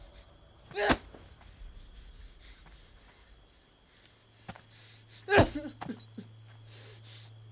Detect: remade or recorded recorded